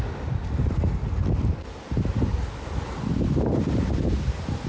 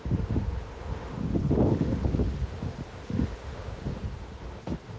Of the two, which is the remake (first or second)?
second